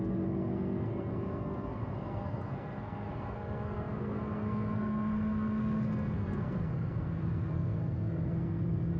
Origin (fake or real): fake